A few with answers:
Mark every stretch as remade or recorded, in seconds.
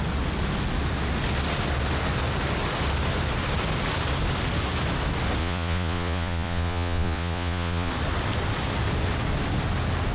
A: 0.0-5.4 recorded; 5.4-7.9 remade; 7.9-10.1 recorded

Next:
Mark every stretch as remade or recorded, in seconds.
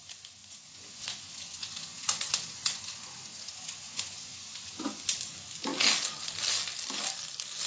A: 0.0-0.4 recorded; 0.4-4.7 remade; 4.7-7.7 recorded